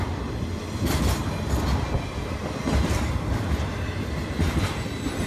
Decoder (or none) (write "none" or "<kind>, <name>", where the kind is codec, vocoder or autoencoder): none